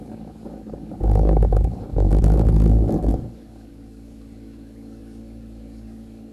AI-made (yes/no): yes